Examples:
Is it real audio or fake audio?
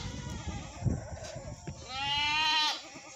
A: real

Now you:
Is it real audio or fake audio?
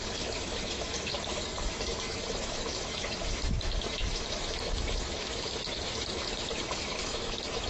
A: fake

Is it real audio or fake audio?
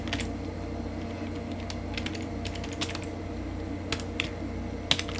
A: real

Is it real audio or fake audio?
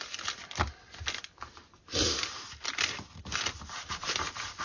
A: real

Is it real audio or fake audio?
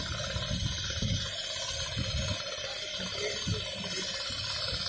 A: real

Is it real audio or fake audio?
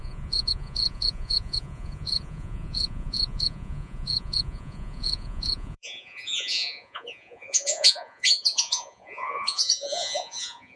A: fake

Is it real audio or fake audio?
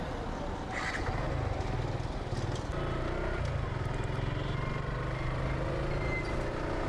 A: real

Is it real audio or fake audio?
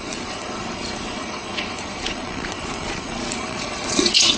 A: fake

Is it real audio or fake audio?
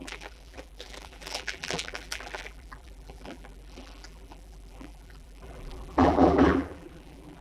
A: fake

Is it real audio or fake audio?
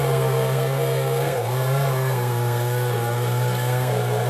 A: fake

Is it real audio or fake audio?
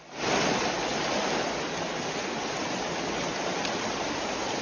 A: real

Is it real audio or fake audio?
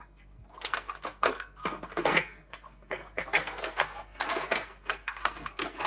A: fake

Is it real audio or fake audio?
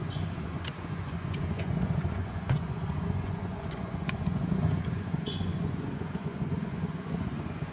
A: fake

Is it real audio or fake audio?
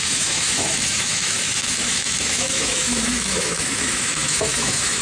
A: fake